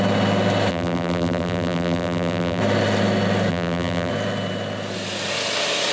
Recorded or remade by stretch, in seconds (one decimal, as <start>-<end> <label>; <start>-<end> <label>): 0.0-0.7 recorded; 0.7-2.6 remade; 2.6-3.5 recorded; 3.5-4.1 remade; 4.1-5.9 recorded